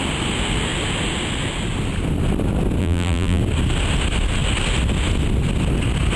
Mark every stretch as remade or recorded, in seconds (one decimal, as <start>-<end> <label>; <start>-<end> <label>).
0.0-2.8 recorded; 2.8-3.4 remade; 3.4-6.2 recorded